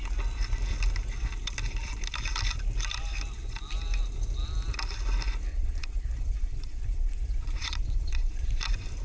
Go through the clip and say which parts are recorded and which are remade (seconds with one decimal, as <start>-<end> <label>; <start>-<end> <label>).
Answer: 0.0-5.5 recorded; 5.5-8.6 remade; 8.6-9.0 recorded